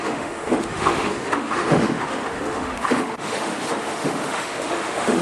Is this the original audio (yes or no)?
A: no